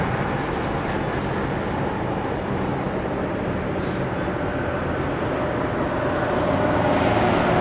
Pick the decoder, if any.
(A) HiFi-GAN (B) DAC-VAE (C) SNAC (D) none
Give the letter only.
D